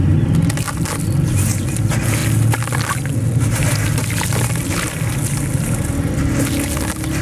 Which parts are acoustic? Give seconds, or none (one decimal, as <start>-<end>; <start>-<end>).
0.0-7.2